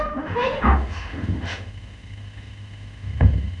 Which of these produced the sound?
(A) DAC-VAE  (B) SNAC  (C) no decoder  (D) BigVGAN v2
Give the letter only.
A